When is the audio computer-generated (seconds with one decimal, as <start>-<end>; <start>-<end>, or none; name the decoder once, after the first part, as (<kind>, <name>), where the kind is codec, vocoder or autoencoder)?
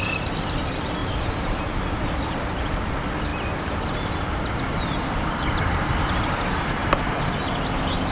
6.8-7.3 (vocoder, BigVGAN v2)